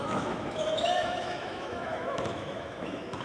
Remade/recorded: remade